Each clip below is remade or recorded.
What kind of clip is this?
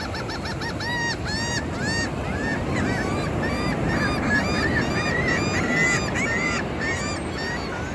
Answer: recorded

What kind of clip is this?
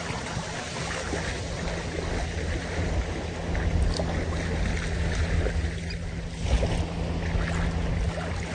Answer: recorded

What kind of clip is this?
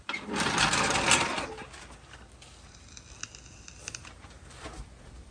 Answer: recorded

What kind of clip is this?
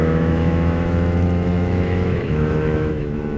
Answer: remade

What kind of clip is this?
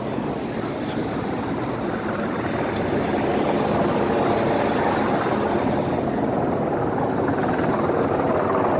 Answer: recorded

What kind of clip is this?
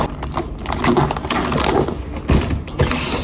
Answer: recorded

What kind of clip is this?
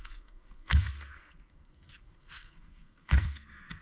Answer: remade